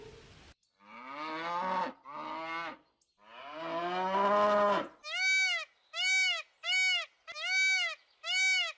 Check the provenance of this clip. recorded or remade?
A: recorded